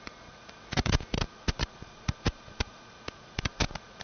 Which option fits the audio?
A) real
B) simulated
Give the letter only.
B